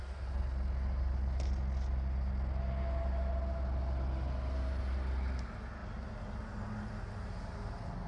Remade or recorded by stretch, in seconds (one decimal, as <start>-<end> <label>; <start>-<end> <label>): 0.0-8.1 recorded